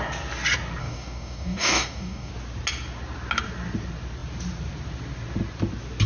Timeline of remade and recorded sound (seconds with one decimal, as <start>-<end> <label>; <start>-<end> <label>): 0.0-0.8 recorded; 0.8-2.3 remade; 2.3-6.1 recorded